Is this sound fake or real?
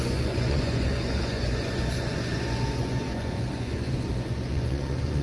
fake